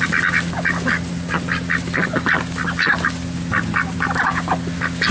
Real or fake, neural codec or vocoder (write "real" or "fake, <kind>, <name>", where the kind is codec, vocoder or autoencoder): real